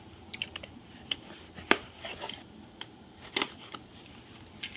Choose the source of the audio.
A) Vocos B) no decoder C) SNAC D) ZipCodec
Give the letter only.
B